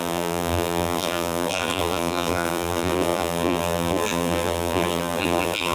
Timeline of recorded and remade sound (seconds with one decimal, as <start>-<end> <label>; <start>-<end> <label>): 0.0-5.7 remade